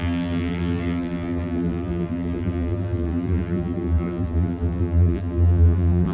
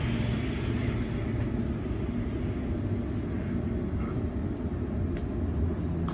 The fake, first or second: first